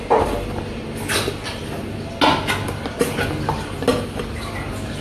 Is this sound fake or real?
real